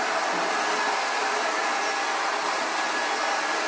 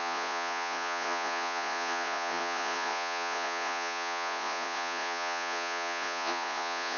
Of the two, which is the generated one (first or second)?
second